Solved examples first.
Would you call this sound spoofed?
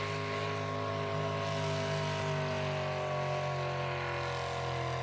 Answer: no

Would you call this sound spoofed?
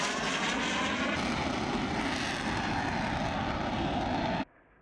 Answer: no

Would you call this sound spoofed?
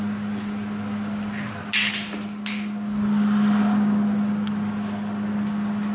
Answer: no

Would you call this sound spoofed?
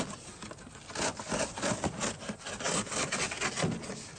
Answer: no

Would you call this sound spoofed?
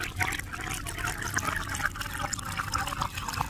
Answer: no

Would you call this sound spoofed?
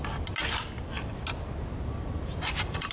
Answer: no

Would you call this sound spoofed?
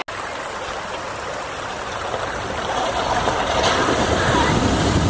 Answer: no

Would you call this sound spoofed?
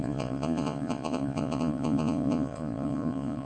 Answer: yes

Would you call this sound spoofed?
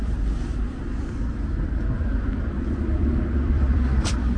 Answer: yes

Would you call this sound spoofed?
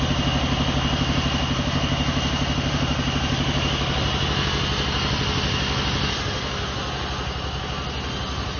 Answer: no